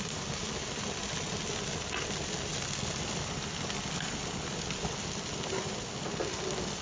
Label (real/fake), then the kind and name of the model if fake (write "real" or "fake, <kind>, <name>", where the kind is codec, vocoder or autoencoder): real